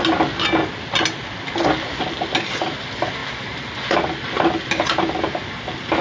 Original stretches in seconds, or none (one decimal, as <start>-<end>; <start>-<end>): 0.0-6.0